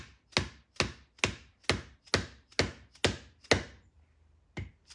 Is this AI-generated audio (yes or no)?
no